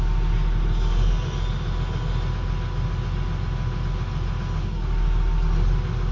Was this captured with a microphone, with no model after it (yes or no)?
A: yes